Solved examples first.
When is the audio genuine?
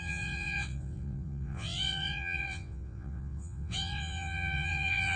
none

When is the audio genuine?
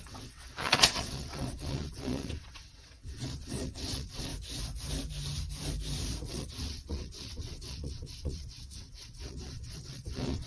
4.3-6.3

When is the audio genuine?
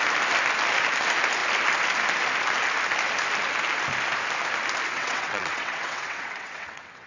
0.0-4.9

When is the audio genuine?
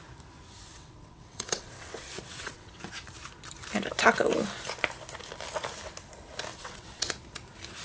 0.0-0.7; 2.9-6.5; 7.1-7.8